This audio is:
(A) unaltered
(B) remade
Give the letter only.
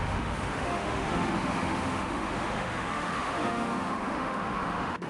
B